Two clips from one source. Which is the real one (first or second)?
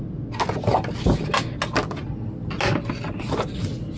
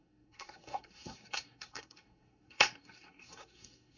first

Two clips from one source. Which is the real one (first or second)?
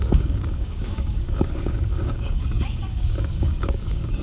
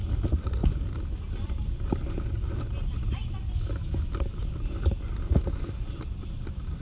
second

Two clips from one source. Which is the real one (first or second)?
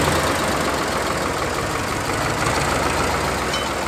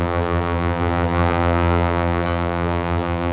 first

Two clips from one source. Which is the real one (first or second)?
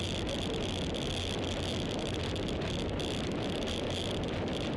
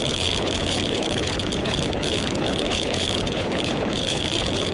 first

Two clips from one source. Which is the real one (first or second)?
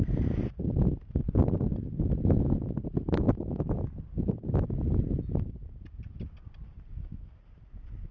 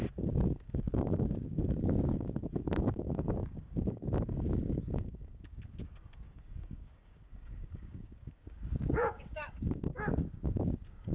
first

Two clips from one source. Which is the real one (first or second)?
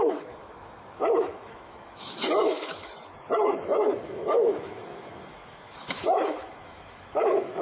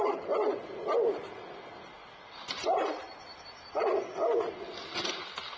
second